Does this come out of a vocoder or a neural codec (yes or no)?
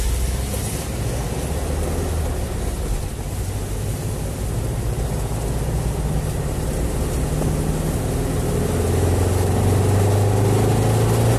no